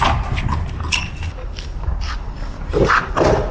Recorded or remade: recorded